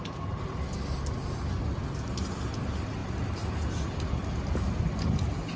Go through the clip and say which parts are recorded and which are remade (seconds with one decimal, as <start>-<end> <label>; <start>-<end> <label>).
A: 0.0-5.6 recorded